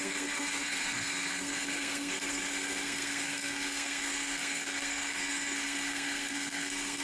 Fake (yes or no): yes